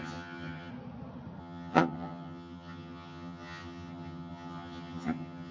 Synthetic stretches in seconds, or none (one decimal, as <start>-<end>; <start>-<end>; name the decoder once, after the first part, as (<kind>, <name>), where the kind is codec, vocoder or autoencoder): 0.0-0.7 (vocoder, HiFi-GAN); 1.4-5.5